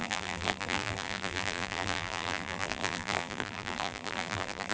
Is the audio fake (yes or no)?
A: yes